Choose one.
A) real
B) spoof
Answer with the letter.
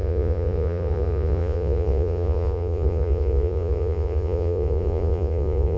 B